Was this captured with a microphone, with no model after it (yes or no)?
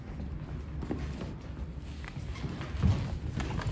yes